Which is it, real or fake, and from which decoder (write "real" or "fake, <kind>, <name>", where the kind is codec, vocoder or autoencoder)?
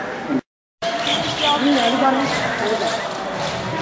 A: real